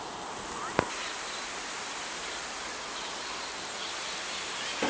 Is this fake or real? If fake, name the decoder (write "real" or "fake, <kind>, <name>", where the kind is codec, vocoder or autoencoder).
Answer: real